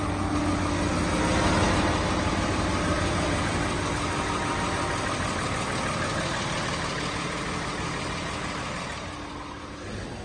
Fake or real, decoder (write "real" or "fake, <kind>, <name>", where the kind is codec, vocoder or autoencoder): real